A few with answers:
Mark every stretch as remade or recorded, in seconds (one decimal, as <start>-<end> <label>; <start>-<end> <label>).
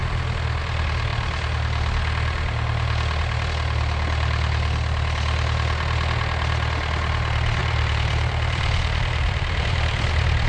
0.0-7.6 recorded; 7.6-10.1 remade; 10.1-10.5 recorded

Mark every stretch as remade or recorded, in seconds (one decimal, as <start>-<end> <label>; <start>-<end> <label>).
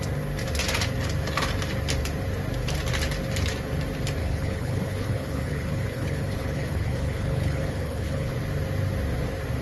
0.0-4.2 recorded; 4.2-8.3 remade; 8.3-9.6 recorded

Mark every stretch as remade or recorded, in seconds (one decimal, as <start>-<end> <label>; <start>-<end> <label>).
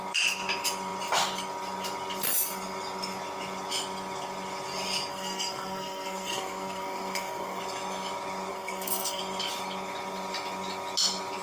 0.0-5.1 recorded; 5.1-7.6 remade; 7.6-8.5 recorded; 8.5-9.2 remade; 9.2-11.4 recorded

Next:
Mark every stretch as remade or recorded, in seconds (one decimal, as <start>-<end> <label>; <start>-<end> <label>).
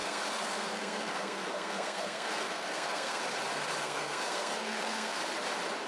0.0-3.2 remade; 3.2-3.8 recorded; 3.8-5.2 remade; 5.2-5.9 recorded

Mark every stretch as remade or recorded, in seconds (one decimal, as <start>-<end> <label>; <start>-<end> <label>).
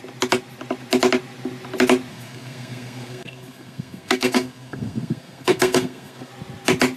0.0-2.1 recorded; 2.1-6.3 remade; 6.3-7.0 recorded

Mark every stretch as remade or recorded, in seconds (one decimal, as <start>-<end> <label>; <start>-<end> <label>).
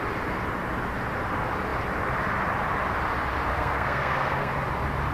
0.0-3.5 recorded; 3.5-4.5 remade; 4.5-5.1 recorded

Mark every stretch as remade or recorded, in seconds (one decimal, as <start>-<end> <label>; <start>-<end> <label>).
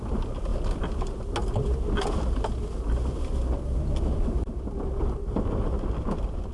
0.0-6.5 recorded